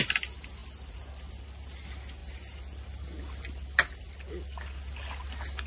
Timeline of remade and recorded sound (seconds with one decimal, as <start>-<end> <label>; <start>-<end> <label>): 0.0-5.7 recorded